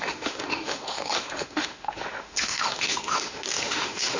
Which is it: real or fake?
fake